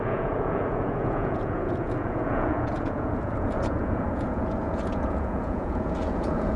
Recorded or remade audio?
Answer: remade